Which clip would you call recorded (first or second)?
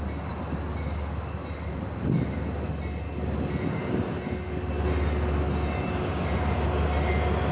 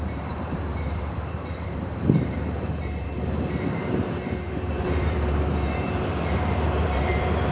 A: first